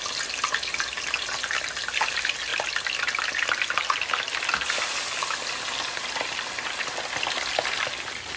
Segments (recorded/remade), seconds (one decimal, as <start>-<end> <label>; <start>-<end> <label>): 0.0-8.4 recorded